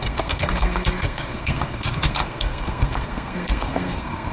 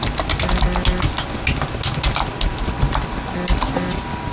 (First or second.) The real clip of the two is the second